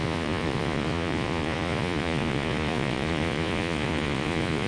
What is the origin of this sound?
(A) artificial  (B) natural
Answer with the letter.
A